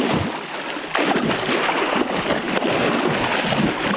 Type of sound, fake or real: real